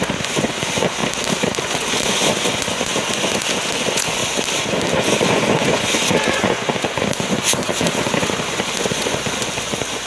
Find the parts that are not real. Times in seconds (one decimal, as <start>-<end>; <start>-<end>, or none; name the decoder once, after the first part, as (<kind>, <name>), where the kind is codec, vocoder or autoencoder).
0.0-1.0 (vocoder, Vocos); 1.6-4.2; 5.0-10.1